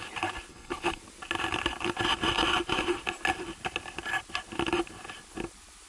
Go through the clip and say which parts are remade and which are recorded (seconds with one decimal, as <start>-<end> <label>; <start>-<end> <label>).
0.0-0.5 recorded; 0.5-1.0 remade; 1.0-5.9 recorded